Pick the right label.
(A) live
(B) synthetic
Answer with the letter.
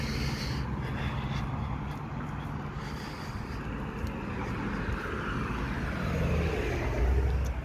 A